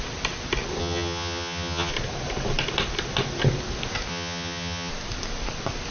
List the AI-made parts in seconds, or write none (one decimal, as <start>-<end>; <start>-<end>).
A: 0.8-1.9; 4.1-4.9